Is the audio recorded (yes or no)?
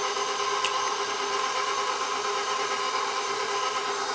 yes